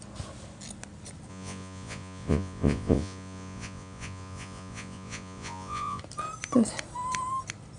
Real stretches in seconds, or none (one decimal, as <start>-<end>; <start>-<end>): 0.0-1.3; 6.0-7.8